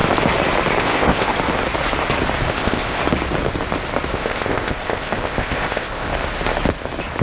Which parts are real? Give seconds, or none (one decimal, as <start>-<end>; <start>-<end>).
0.0-0.8; 1.3-2.5; 3.0-4.1; 6.1-7.2